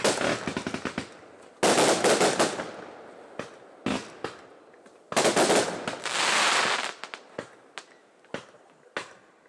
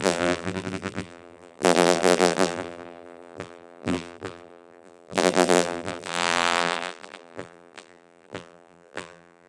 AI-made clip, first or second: second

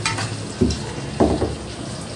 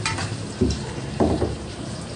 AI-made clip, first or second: second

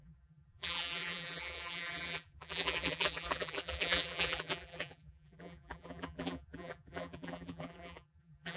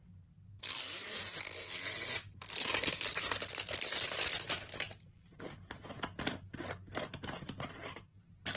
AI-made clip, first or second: first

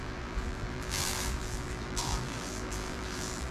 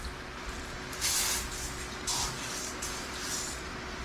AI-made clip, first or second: first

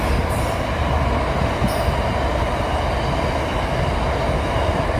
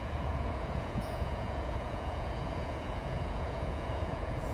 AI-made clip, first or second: second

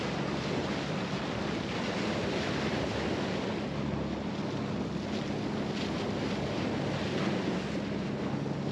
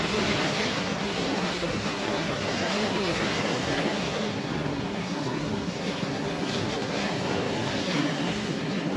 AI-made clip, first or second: second